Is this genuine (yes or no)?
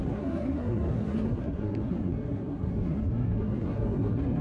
no